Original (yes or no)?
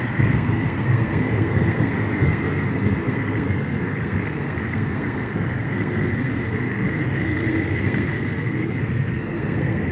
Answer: no